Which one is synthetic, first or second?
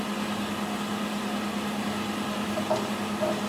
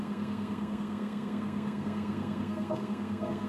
second